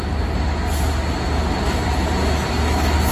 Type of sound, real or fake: real